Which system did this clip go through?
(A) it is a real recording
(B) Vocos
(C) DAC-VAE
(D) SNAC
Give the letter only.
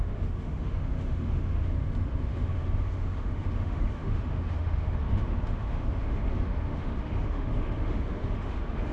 C